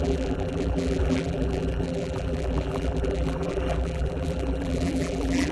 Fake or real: fake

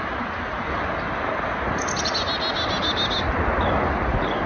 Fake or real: real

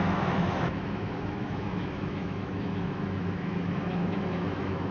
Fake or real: fake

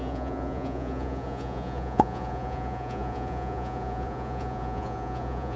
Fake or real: fake